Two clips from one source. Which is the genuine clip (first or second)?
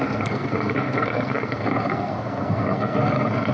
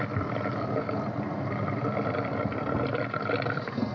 second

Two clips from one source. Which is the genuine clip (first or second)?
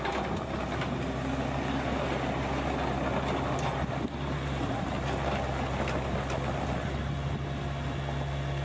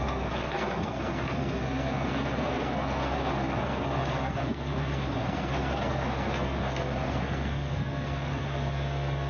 first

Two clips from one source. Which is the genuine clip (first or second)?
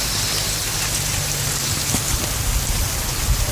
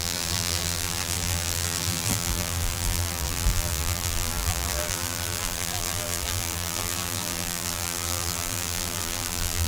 first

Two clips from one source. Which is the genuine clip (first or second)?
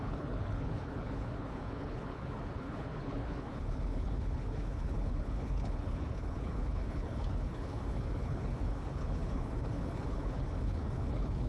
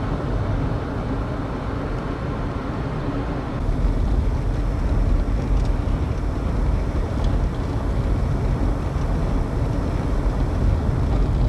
second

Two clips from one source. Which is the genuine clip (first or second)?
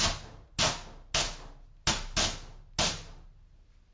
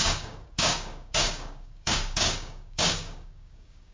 first